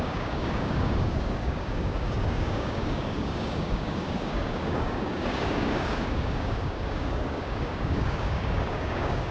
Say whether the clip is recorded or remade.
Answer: remade